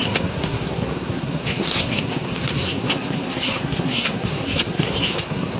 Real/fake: fake